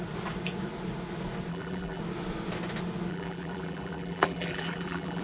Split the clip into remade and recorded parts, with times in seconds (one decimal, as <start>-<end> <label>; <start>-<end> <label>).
0.0-1.5 recorded; 1.5-2.0 remade; 2.0-3.1 recorded; 3.1-5.2 remade